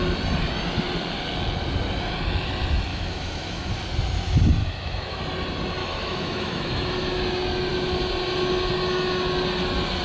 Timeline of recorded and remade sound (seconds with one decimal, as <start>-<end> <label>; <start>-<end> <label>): 0.0-2.9 recorded; 2.9-3.7 remade; 3.7-4.6 recorded; 4.6-5.2 remade; 5.2-5.8 recorded; 5.8-6.9 remade; 6.9-10.0 recorded